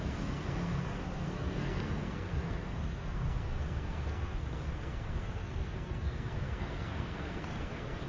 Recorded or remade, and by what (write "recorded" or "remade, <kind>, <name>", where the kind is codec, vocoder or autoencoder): remade, codec, SNAC